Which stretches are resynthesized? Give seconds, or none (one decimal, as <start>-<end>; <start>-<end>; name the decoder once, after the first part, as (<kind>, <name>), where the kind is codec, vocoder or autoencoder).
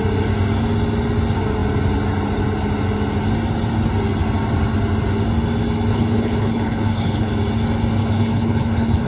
5.9-7.3 (codec, HILCodec); 8.0-9.1